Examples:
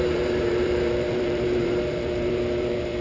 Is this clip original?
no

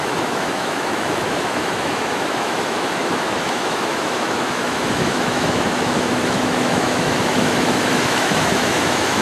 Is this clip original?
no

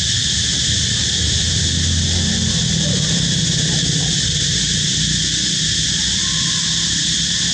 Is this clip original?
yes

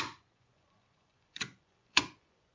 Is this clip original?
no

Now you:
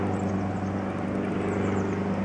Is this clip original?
yes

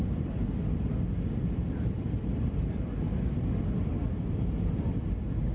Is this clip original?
yes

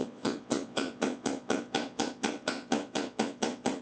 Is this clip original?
no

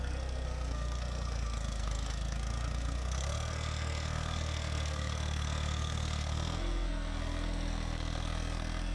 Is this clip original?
no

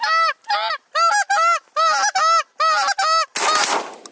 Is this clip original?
yes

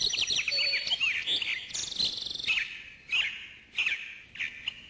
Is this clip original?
yes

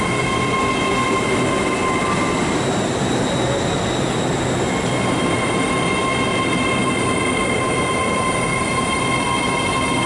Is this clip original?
yes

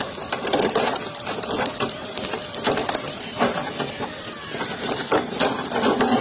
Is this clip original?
yes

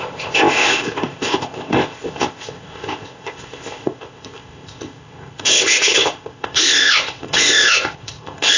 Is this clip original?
no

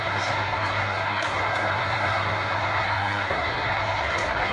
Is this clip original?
no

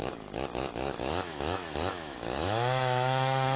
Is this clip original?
no